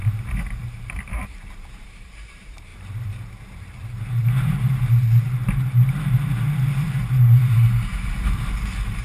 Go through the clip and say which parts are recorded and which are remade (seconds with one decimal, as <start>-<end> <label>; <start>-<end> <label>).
0.0-2.7 remade; 2.7-3.3 recorded; 3.3-4.2 remade; 4.2-7.9 recorded; 7.9-9.0 remade